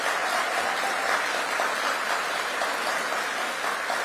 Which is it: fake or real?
real